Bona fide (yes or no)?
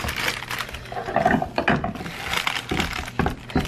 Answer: yes